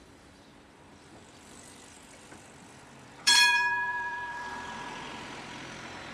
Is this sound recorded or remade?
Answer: remade